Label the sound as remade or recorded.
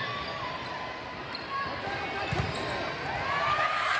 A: recorded